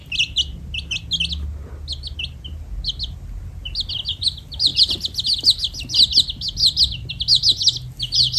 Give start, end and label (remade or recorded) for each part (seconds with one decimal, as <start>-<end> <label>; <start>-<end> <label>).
0.0-8.4 recorded